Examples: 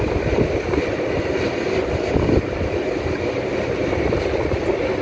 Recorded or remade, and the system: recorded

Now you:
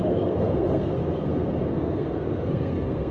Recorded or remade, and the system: remade, codec, SNAC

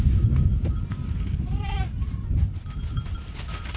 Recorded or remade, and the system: recorded